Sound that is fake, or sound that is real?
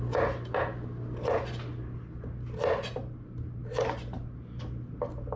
real